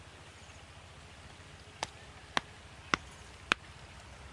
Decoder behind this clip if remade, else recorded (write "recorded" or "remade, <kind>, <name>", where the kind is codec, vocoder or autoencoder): recorded